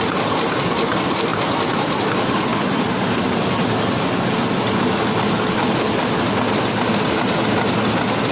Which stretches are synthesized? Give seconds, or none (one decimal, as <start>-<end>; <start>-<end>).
none